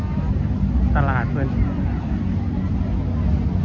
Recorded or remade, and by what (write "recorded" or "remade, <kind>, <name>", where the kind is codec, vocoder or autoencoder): recorded